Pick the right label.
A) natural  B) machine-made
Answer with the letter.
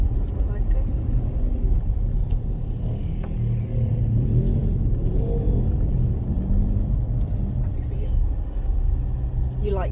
A